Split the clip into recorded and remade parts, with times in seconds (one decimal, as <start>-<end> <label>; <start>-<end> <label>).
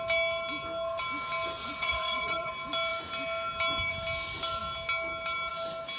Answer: 0.0-1.6 recorded; 1.6-2.5 remade; 2.5-6.0 recorded